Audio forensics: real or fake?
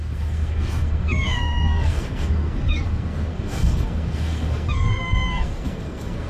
fake